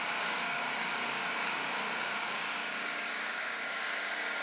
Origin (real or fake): fake